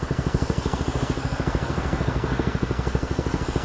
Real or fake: fake